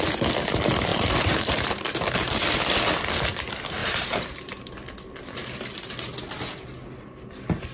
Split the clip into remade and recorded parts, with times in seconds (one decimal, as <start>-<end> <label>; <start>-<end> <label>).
0.0-0.9 recorded; 0.9-1.7 remade; 1.7-3.8 recorded; 3.8-4.7 remade; 4.7-7.7 recorded